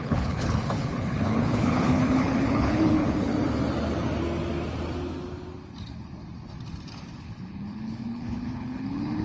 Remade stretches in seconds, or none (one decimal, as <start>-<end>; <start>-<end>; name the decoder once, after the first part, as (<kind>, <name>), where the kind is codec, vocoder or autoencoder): 0.0-3.3 (codec, HILCodec); 7.2-9.2